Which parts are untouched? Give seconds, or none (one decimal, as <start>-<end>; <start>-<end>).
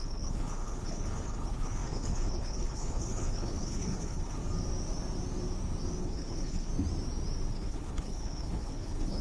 4.4-6.0; 6.7-7.5